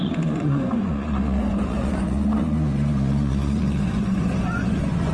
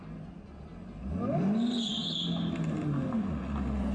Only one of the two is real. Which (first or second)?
second